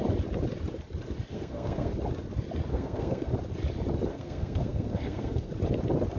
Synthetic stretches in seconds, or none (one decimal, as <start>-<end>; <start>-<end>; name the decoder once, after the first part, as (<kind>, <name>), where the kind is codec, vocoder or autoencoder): 1.3-1.9 (codec, SNAC); 2.7-3.3; 4.1-5.5